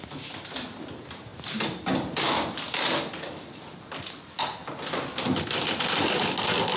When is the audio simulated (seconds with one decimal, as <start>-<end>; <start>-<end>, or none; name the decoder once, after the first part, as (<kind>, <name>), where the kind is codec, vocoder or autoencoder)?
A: none